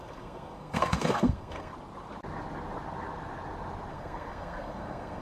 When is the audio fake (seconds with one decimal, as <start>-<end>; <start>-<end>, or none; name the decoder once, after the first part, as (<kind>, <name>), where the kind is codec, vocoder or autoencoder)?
0.0-1.7 (codec, SNAC); 3.9-5.2

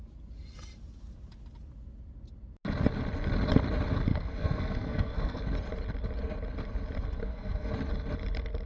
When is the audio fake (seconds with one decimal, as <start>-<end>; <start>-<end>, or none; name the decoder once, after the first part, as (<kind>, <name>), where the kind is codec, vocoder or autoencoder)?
4.1-5.4 (codec, SNAC); 7.2-7.7

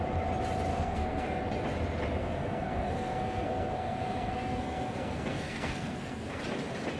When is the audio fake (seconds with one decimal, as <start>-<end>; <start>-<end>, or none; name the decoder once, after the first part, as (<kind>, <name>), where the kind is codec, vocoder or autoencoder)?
0.7-1.4 (codec, SNAC); 2.2-6.4

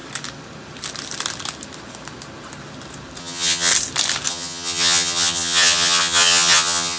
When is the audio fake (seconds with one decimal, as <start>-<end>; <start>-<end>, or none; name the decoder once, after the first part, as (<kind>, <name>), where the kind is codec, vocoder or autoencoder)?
3.2-3.7 (vocoder, HiFi-GAN); 4.3-7.0